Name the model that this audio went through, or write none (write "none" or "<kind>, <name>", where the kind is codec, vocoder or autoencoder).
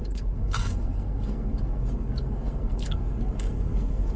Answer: codec, SNAC